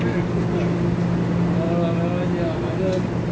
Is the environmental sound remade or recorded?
recorded